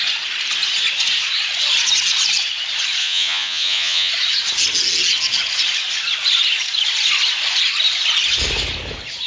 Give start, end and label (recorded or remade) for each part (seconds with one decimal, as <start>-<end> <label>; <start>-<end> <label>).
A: 0.0-3.0 recorded; 3.0-4.1 remade; 4.1-9.3 recorded